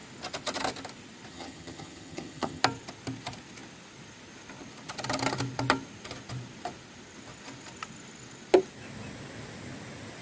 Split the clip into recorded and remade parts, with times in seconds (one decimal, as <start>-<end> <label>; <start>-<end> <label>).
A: 0.0-1.3 recorded; 1.3-2.6 remade; 2.6-10.2 recorded